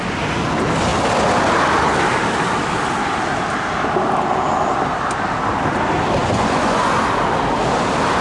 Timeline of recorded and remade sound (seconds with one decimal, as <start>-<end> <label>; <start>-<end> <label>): 0.0-6.2 recorded; 6.2-6.9 remade; 6.9-8.2 recorded